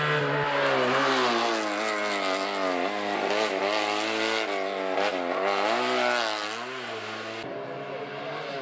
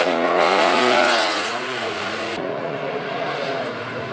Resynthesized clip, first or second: second